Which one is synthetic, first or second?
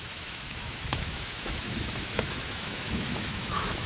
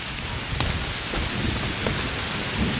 first